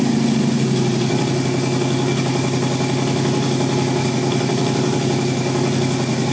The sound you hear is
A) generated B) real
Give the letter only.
B